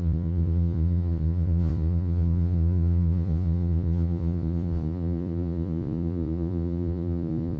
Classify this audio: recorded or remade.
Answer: remade